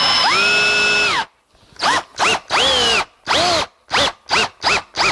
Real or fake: real